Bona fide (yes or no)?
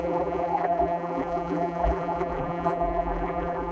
no